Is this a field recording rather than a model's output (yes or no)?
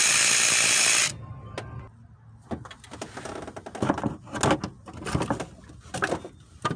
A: yes